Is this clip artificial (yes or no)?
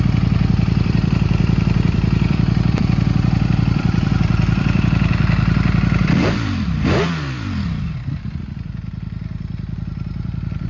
yes